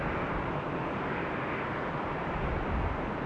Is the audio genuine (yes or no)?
yes